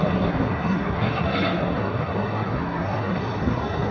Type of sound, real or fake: fake